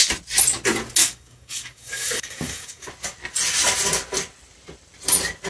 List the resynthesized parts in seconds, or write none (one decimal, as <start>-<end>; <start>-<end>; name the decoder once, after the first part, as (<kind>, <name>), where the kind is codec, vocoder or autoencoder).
1.0-2.9 (codec, DAC)